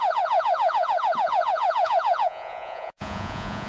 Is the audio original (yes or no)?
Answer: no